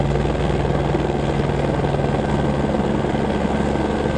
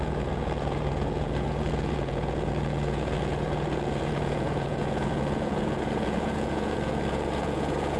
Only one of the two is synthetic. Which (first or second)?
second